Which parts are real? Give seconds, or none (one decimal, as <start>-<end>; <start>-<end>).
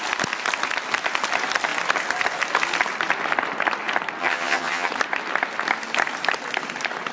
0.0-4.2; 4.9-7.1